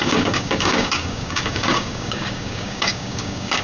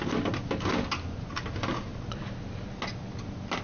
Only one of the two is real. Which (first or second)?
second